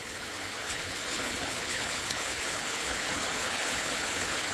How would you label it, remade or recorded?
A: remade